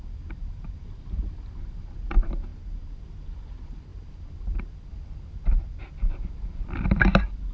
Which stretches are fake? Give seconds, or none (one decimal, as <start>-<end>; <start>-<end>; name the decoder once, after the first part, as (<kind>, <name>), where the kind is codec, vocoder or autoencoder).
none